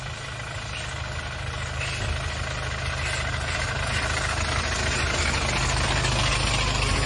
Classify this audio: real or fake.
real